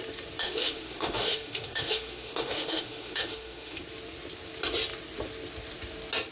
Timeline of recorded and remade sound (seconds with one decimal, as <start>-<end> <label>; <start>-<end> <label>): 0.0-0.4 recorded; 0.4-3.8 remade; 3.8-6.3 recorded